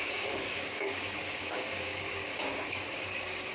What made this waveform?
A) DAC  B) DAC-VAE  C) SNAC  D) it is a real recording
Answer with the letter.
A